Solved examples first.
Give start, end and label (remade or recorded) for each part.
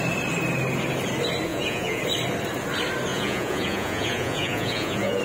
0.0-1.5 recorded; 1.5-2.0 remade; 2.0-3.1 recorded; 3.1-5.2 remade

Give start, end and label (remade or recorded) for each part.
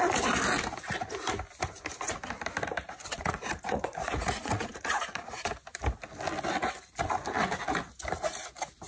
0.0-3.1 recorded; 3.1-5.2 remade; 5.2-8.9 recorded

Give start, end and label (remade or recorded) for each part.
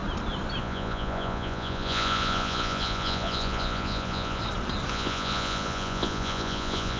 0.0-0.6 recorded; 0.6-4.4 remade; 4.4-4.9 recorded; 4.9-7.0 remade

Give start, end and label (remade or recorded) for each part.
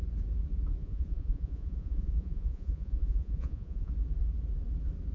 0.0-0.8 recorded; 0.8-3.9 remade; 3.9-5.1 recorded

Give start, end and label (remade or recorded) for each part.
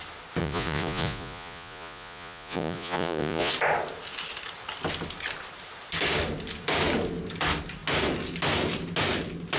0.0-0.4 recorded; 0.4-3.5 remade; 3.5-9.6 recorded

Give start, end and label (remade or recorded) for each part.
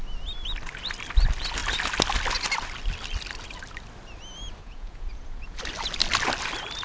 0.0-4.6 recorded; 4.6-5.6 remade; 5.6-6.8 recorded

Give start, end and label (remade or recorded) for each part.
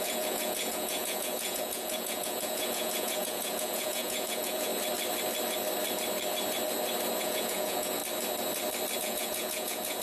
0.0-4.7 remade; 4.7-7.2 recorded; 7.2-8.0 remade; 8.0-9.0 recorded; 9.0-10.0 remade